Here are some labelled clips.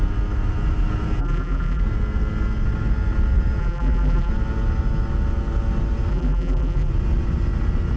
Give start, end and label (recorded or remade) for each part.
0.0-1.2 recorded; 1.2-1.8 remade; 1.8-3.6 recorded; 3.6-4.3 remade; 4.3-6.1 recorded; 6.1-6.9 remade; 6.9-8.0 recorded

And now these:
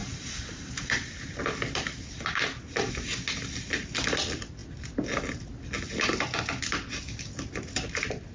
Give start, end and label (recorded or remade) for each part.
0.0-1.4 remade; 1.4-8.3 recorded

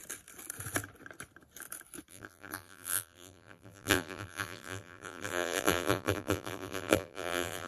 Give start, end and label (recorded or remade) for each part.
0.0-2.1 recorded; 2.1-7.7 remade

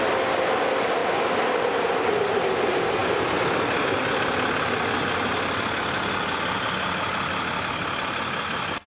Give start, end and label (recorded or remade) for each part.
0.0-8.9 recorded

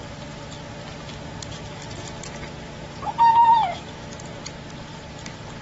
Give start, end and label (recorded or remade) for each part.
0.0-5.6 recorded

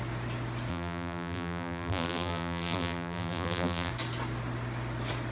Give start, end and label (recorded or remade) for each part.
0.0-0.7 recorded; 0.7-3.9 remade; 3.9-5.3 recorded

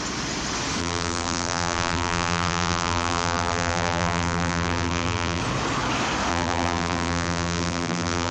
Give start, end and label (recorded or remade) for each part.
0.0-0.8 recorded; 0.8-5.4 remade; 5.4-6.3 recorded; 6.3-8.3 remade